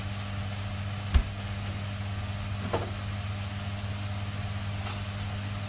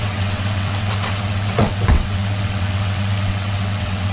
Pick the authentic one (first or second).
first